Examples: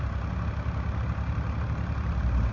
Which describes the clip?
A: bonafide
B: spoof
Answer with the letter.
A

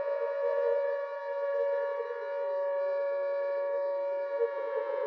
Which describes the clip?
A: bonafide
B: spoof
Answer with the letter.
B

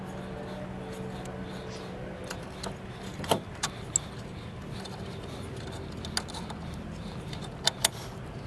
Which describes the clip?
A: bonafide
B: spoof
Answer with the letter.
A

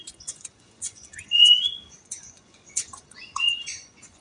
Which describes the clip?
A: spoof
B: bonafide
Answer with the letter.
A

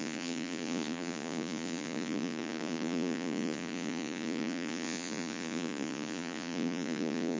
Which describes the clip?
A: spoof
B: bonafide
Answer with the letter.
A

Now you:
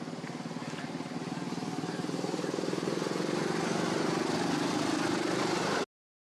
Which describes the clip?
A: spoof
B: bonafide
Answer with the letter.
B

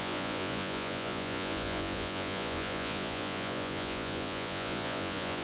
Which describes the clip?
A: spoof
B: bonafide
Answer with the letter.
A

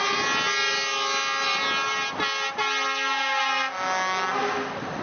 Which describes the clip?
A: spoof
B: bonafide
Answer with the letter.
B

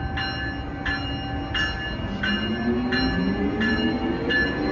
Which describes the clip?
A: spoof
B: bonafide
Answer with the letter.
B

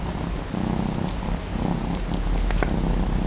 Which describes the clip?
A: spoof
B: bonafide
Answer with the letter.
B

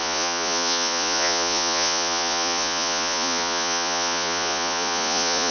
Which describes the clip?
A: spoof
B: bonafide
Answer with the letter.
A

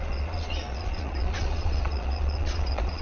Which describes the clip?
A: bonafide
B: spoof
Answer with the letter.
B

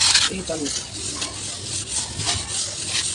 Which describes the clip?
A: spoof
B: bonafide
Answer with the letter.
B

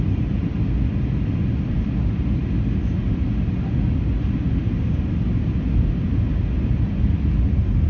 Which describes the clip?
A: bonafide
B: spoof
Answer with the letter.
A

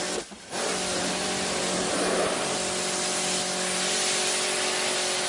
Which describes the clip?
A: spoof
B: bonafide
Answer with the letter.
B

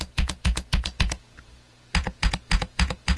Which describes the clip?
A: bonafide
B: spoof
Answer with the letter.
B